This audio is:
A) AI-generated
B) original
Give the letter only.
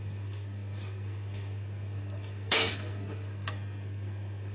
A